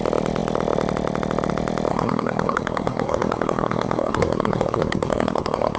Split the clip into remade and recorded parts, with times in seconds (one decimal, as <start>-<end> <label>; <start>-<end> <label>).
0.0-1.9 recorded; 1.9-5.8 remade